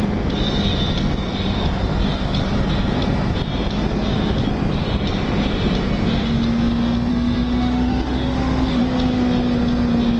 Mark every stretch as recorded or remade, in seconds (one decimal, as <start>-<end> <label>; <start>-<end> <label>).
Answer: 0.0-7.1 recorded; 7.1-8.8 remade; 8.8-10.2 recorded